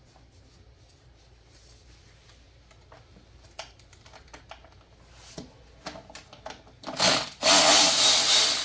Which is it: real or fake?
real